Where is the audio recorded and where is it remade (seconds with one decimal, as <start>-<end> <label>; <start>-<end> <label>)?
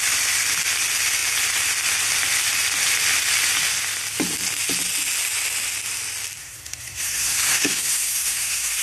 0.0-6.4 recorded; 6.4-8.8 remade